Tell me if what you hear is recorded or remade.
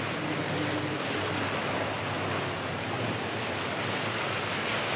recorded